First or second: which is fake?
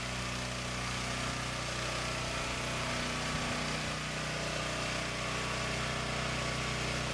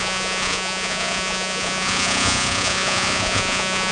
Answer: second